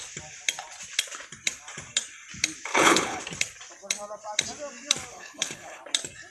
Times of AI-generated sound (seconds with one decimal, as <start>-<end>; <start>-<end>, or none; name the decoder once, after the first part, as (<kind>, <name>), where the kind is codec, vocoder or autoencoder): 2.7-3.2 (codec, HILCodec); 5.1-5.8